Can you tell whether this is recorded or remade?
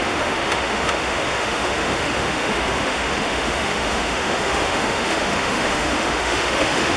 remade